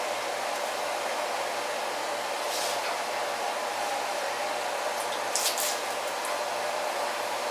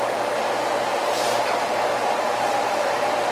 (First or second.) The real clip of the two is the first